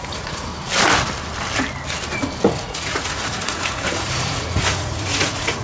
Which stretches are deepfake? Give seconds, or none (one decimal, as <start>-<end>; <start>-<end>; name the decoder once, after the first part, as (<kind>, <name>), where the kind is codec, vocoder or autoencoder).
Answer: 0.0-0.5 (vocoder, Vocos); 2.6-5.6